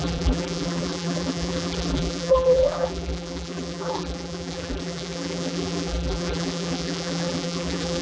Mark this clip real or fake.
fake